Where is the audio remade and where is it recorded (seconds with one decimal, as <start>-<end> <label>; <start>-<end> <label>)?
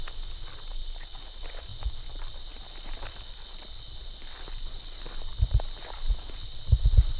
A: 0.0-7.2 recorded